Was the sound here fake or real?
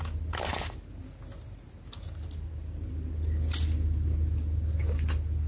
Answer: real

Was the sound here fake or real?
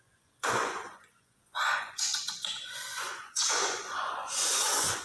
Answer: fake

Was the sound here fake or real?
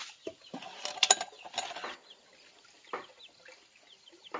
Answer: real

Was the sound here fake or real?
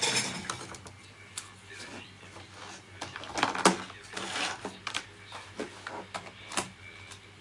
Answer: real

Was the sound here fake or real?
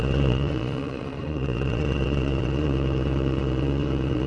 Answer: fake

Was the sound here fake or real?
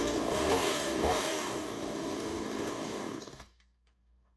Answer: fake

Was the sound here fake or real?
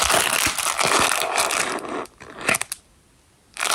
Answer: real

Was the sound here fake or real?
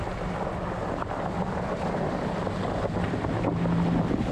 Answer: real